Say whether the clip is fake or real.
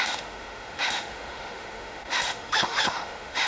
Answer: fake